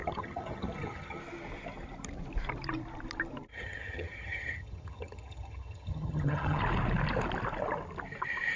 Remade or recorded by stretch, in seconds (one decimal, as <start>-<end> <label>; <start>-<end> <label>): 0.0-1.2 remade; 1.2-3.5 recorded; 3.5-6.6 remade; 6.6-8.6 recorded